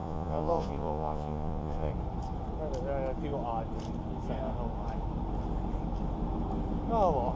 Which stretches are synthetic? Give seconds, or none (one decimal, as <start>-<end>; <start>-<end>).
0.0-1.9